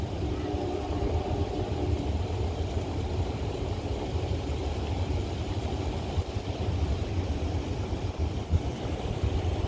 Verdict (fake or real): fake